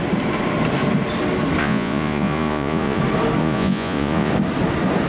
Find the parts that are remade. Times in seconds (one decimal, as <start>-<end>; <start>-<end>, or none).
1.6-3.0; 3.4-4.3